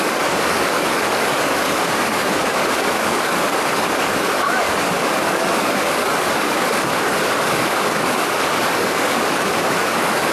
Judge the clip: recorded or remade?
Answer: remade